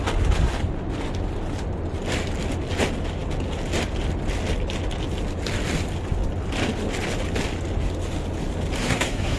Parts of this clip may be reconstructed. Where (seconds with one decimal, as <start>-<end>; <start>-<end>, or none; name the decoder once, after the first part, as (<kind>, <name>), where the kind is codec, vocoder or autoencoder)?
8.8-9.4 (codec, SNAC)